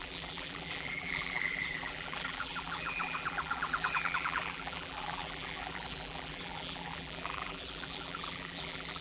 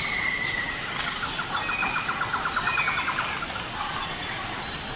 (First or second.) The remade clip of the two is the first